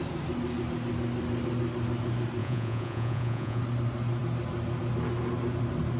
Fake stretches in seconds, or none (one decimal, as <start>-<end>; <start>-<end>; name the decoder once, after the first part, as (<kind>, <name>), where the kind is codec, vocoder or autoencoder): 2.4-3.6 (vocoder, Vocos)